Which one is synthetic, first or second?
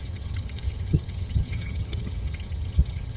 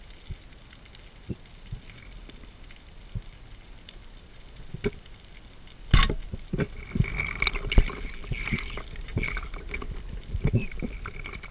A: first